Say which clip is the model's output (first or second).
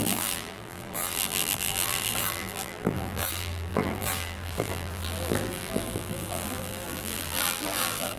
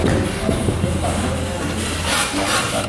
first